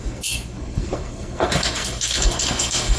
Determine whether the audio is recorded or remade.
remade